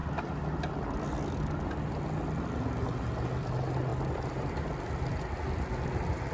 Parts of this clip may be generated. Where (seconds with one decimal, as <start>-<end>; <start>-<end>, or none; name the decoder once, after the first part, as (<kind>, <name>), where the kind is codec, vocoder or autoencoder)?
0.0-1.9 (vocoder, BigVGAN v2); 3.9-5.0